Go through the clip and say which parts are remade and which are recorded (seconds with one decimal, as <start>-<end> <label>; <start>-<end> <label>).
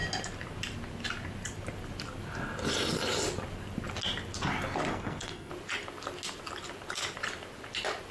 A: 0.0-4.9 recorded; 4.9-5.5 remade; 5.5-8.1 recorded